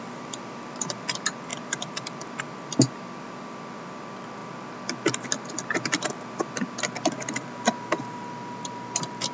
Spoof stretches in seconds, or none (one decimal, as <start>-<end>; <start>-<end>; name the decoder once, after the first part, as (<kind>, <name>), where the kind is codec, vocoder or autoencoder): none